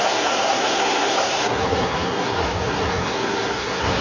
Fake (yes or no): yes